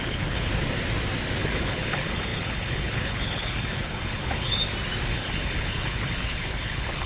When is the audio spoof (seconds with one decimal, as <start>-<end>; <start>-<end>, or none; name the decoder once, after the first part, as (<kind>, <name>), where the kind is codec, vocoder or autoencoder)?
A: 0.0-0.5 (codec, HILCodec); 1.4-4.6; 5.1-7.1